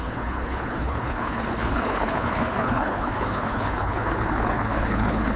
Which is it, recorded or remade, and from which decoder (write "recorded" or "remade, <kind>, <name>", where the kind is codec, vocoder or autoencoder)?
remade, codec, HILCodec